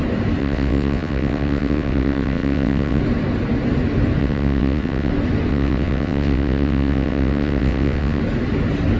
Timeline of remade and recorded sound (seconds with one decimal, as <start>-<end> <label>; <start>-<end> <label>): 0.0-0.4 recorded; 0.4-3.0 remade; 3.0-4.2 recorded; 4.2-5.1 remade; 5.1-5.5 recorded; 5.5-8.2 remade; 8.2-9.0 recorded